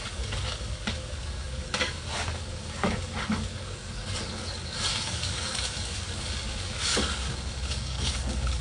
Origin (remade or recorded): remade